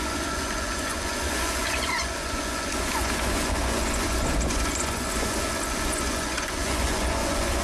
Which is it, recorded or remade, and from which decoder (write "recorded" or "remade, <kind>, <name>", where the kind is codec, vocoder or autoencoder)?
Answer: remade, vocoder, Vocos